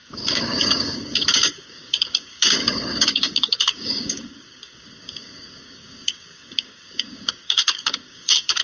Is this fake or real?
fake